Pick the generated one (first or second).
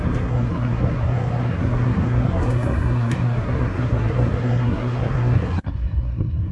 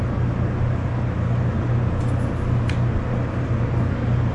first